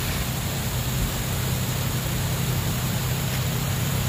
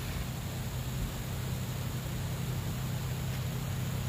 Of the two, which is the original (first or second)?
second